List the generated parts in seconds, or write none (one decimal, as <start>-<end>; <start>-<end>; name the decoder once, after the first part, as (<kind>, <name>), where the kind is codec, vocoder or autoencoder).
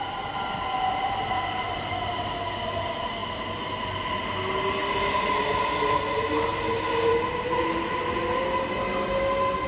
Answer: none